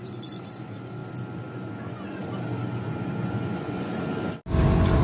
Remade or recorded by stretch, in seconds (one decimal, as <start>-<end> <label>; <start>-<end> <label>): 0.0-1.0 remade; 1.0-1.8 recorded; 1.8-2.2 remade; 2.2-3.0 recorded; 3.0-3.9 remade; 3.9-5.0 recorded